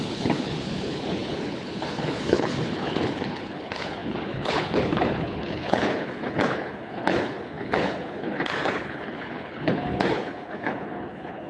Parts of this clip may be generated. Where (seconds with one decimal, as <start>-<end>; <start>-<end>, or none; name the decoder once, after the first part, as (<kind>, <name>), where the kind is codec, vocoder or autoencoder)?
0.0-11.5 (codec, HILCodec)